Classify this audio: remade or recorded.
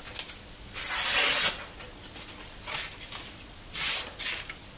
recorded